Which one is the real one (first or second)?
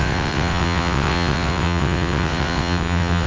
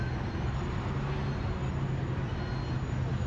second